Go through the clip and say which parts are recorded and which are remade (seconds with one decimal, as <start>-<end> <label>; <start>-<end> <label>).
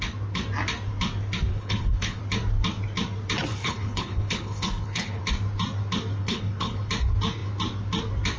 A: 0.0-1.5 recorded; 1.5-2.2 remade; 2.2-3.5 recorded; 3.5-5.2 remade; 5.2-6.2 recorded; 6.2-6.9 remade; 6.9-8.4 recorded